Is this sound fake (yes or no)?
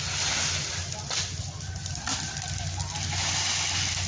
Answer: no